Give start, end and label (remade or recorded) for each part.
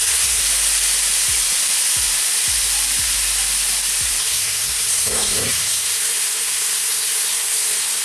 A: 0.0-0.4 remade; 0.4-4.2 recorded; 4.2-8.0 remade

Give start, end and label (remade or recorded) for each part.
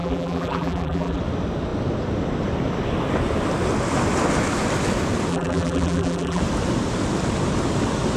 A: 0.0-1.2 remade; 1.2-5.3 recorded; 5.3-6.4 remade; 6.4-8.2 recorded